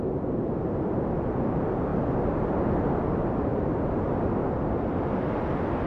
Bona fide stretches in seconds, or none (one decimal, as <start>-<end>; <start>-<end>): 0.0-3.5; 4.1-5.9